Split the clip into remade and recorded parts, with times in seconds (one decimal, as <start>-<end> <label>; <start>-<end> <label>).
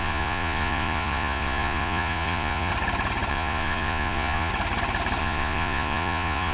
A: 0.0-2.7 remade; 2.7-3.3 recorded; 3.3-4.5 remade; 4.5-5.2 recorded; 5.2-6.5 remade